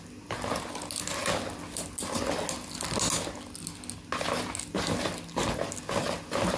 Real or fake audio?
real